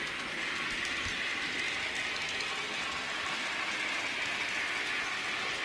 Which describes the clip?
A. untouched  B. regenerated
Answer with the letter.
A